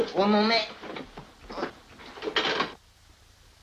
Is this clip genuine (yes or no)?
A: yes